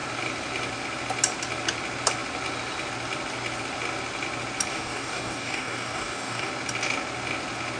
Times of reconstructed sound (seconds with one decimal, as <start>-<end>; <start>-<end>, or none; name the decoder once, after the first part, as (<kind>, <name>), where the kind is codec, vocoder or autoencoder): 4.7-6.5 (codec, DAC)

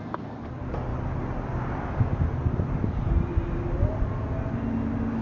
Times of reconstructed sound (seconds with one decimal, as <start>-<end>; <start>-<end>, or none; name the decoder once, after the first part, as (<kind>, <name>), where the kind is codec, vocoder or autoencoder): none